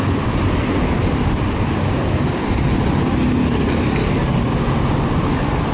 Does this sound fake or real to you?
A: real